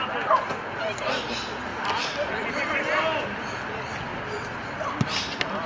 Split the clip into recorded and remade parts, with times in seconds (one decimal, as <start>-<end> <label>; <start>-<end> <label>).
0.0-5.7 recorded